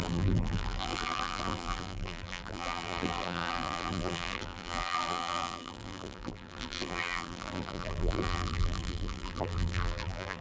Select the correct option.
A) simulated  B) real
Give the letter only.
A